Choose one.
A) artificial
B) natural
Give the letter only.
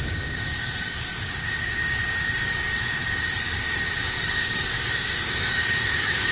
A